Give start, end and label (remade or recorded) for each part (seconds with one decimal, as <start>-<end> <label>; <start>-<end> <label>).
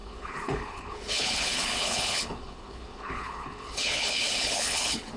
0.0-5.2 remade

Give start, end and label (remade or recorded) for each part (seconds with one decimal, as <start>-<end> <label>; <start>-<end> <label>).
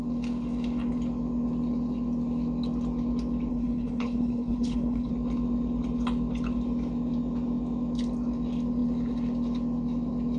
0.0-3.5 recorded; 3.5-5.1 remade; 5.1-10.4 recorded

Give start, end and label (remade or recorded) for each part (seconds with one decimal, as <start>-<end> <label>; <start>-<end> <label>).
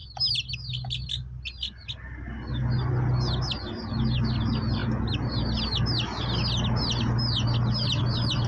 0.0-8.5 recorded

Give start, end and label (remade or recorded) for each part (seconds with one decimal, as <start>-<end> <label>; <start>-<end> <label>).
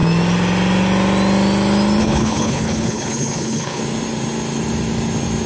0.0-2.0 recorded; 2.0-3.8 remade; 3.8-5.5 recorded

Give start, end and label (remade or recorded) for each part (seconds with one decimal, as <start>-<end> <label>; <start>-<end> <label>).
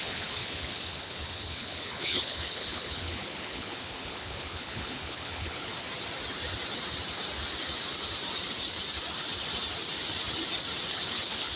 0.0-5.7 remade; 5.7-10.9 recorded; 10.9-11.6 remade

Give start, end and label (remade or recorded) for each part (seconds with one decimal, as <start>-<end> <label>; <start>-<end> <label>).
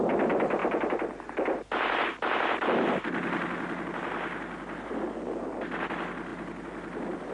0.0-7.3 recorded